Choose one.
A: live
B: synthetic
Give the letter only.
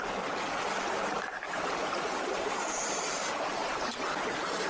A